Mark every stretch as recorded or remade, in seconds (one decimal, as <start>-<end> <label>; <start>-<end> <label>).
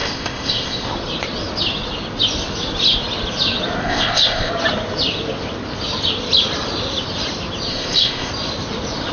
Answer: 0.0-0.9 remade; 0.9-3.8 recorded; 3.8-4.5 remade; 4.5-7.7 recorded; 7.7-8.3 remade; 8.3-9.1 recorded